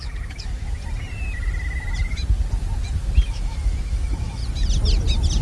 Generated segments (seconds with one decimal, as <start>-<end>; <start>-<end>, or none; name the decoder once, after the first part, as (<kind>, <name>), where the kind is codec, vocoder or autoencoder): 0.0-0.8 (autoencoder, DAC-VAE); 3.3-4.4